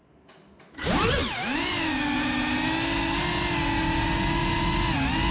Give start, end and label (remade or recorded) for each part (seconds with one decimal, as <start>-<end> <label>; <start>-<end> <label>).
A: 0.0-5.3 recorded

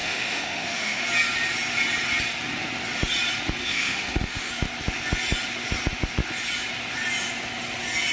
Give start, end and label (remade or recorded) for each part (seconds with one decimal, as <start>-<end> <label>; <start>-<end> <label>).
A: 0.0-1.0 remade; 1.0-3.6 recorded; 3.6-4.5 remade; 4.5-8.1 recorded

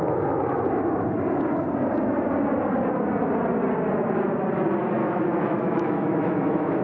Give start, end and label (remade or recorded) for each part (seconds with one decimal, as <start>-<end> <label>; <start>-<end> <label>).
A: 0.0-5.0 recorded; 5.0-6.8 remade

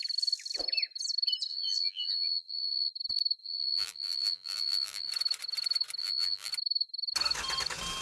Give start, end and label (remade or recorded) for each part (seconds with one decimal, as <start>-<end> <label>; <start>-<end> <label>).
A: 0.0-1.5 recorded; 1.5-2.9 remade; 2.9-3.4 recorded; 3.4-5.1 remade; 5.1-6.0 recorded; 6.0-6.5 remade; 6.5-8.0 recorded

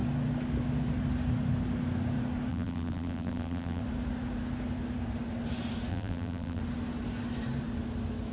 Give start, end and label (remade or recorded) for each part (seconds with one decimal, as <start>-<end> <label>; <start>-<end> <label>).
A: 0.0-2.5 recorded; 2.5-3.8 remade; 3.8-5.9 recorded; 5.9-6.6 remade; 6.6-8.3 recorded

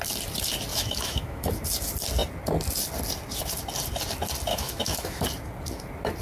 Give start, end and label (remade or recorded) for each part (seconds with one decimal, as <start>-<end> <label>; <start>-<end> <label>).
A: 0.0-0.7 recorded; 0.7-1.5 remade; 1.5-4.5 recorded; 4.5-5.2 remade; 5.2-6.2 recorded

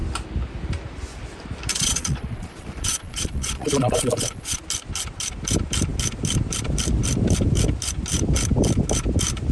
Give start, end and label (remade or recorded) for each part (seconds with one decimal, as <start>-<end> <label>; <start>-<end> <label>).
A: 0.0-1.7 recorded; 1.7-4.6 remade; 4.6-9.5 recorded